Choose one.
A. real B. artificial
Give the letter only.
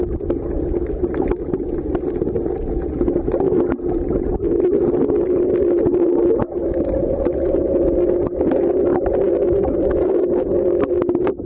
A